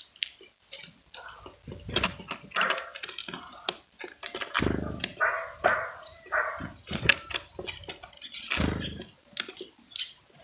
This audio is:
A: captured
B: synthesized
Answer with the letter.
A